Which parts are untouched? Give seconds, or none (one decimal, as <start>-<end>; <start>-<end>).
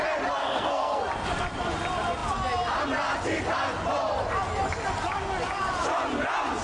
0.0-0.4; 1.0-6.6